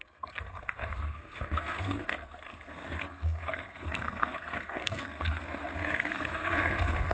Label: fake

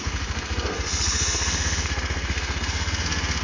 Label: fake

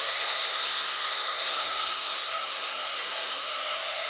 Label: fake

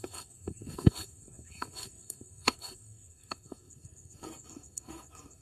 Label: fake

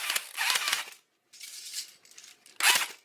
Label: real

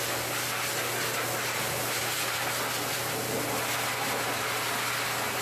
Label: real